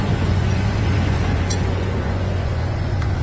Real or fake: fake